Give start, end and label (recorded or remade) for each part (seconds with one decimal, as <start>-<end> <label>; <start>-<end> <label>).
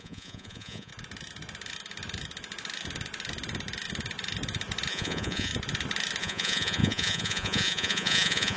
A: 0.0-0.9 remade; 0.9-4.9 recorded; 4.9-5.5 remade; 5.5-6.2 recorded; 6.2-8.6 remade